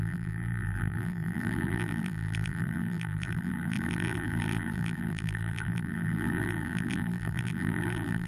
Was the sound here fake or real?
fake